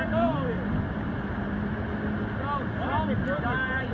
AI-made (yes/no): no